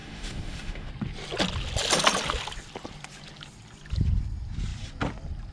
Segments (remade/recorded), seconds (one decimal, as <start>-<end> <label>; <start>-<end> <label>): 0.0-0.9 remade; 0.9-5.5 recorded